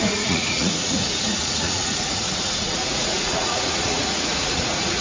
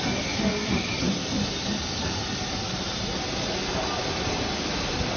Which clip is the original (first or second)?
second